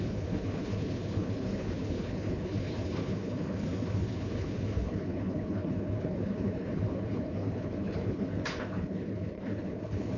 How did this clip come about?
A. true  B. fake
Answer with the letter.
B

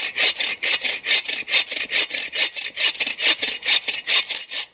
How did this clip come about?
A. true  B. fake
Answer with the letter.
A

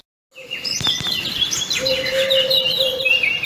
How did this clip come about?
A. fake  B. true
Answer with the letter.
B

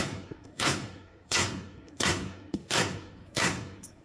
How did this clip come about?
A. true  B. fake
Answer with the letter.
B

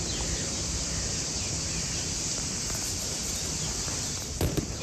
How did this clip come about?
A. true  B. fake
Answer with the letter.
A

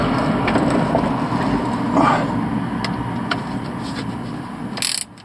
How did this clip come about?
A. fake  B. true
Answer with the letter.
B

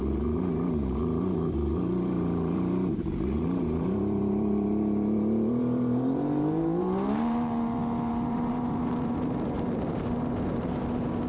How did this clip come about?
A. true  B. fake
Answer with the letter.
B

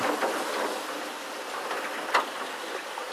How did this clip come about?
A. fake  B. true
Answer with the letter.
B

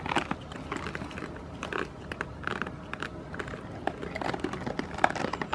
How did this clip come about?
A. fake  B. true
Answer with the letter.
B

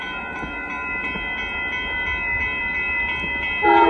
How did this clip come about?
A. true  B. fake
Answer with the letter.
A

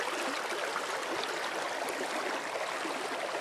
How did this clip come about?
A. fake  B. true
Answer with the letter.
B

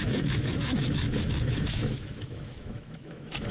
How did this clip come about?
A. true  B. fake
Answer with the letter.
B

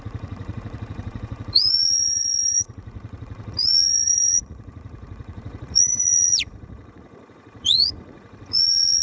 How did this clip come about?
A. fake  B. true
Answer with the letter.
A